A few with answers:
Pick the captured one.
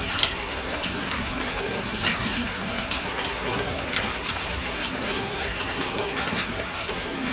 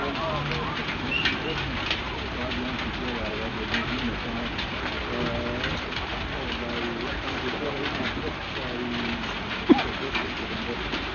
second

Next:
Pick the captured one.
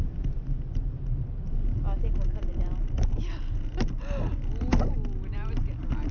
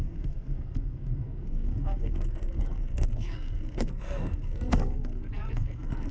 first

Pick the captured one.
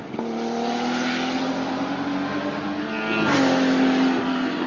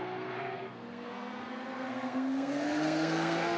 first